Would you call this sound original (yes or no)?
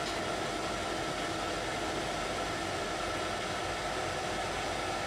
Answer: yes